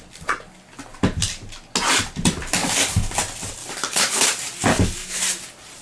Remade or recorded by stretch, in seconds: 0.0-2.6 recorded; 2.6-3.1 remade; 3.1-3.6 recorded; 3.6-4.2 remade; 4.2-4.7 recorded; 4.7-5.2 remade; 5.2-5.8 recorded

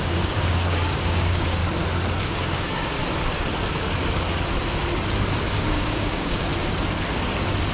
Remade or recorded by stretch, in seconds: 0.0-1.6 remade; 1.6-2.2 recorded; 2.2-3.0 remade; 3.0-5.6 recorded; 5.6-6.5 remade; 6.5-7.7 recorded